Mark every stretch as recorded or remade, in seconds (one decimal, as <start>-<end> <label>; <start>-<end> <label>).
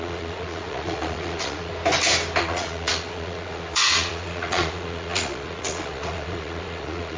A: 0.0-1.7 remade; 1.7-2.4 recorded; 2.4-7.2 remade